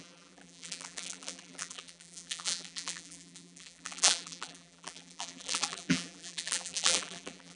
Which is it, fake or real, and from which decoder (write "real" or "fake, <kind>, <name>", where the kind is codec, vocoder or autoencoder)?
fake, vocoder, BigVGAN v2